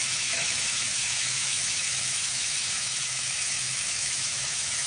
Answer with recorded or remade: remade